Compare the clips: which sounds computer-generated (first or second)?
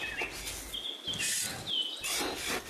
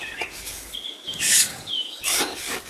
second